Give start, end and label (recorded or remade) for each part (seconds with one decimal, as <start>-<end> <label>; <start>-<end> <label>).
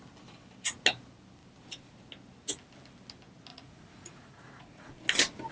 0.0-3.5 recorded; 3.5-4.9 remade; 4.9-5.5 recorded